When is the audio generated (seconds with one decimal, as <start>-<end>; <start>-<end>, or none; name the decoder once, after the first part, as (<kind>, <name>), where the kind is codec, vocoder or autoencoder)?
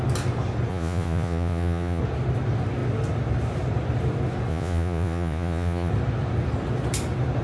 0.7-2.0 (vocoder, Vocos); 4.5-5.9